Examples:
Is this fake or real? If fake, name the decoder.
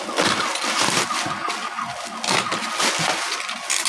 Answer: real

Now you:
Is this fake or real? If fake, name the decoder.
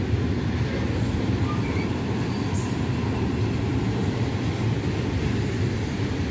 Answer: real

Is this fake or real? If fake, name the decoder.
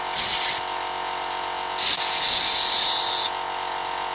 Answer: real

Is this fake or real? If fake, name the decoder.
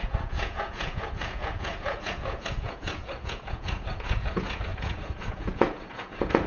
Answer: fake, vocoder, Vocos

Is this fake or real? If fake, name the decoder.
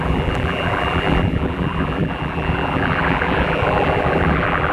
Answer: fake, vocoder, BigVGAN v2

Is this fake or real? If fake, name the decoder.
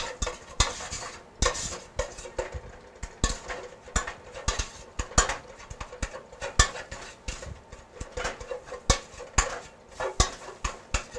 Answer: real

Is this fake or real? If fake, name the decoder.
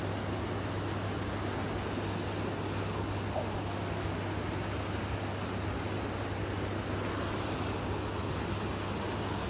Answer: real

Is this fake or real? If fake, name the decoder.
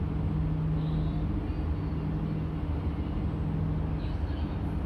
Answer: real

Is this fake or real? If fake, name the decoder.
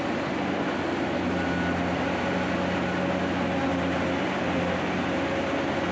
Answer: real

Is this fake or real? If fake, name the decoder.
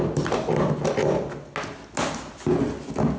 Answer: real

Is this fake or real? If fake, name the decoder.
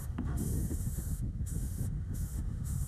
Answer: fake, autoencoder, DAC-VAE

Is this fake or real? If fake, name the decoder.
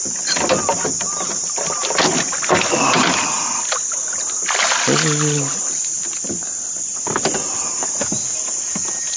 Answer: real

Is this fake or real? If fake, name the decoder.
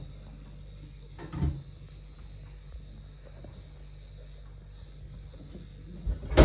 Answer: real